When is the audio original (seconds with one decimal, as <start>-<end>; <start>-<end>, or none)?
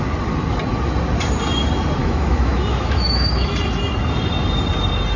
0.0-2.0; 3.5-5.2